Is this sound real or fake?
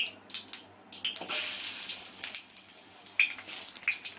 real